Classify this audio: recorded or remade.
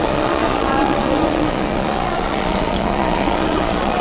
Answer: remade